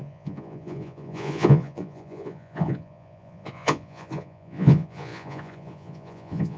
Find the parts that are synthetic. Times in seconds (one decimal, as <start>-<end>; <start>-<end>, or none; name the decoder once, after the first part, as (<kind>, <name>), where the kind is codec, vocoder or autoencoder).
0.0-6.6 (vocoder, Vocos)